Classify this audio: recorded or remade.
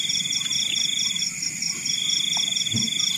recorded